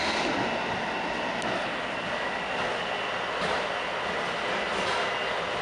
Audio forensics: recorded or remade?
recorded